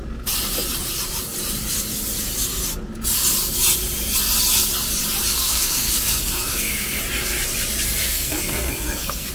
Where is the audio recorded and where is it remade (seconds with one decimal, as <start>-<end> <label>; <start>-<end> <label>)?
0.0-5.3 recorded; 5.3-7.0 remade; 7.0-8.0 recorded; 8.0-9.3 remade